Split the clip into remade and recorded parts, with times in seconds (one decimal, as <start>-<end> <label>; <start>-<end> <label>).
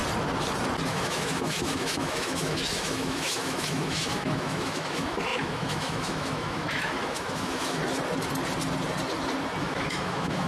0.0-0.9 recorded; 0.9-7.8 remade; 7.8-9.6 recorded; 9.6-10.5 remade